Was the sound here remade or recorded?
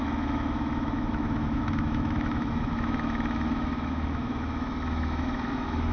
remade